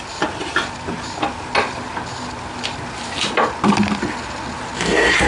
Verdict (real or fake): real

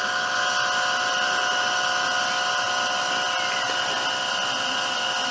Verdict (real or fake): real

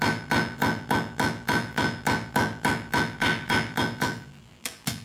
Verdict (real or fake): fake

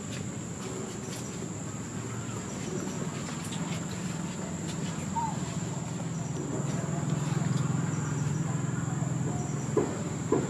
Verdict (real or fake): real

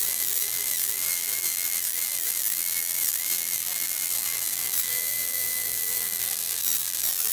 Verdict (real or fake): fake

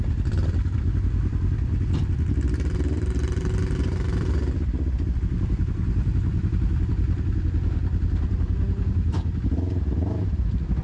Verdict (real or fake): fake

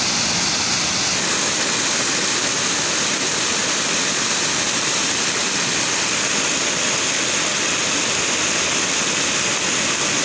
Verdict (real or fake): real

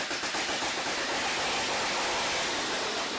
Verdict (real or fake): real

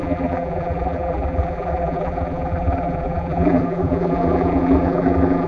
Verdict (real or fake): fake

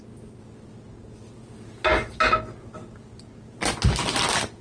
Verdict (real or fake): real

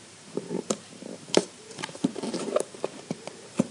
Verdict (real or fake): fake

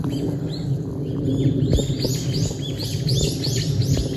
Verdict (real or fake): real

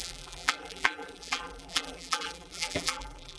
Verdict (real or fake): fake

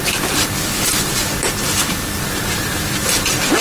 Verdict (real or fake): fake